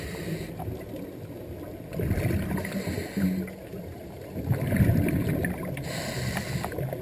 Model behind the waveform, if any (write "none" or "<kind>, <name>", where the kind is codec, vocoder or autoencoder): none